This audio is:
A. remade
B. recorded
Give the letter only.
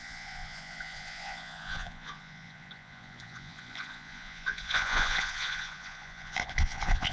A